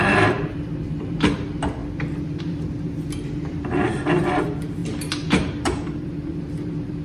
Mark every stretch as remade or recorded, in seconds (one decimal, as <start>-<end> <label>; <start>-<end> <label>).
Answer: 0.0-7.0 remade